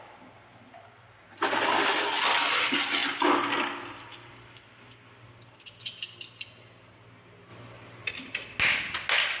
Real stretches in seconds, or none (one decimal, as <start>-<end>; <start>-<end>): 0.0-3.0; 4.3-7.5; 8.6-9.4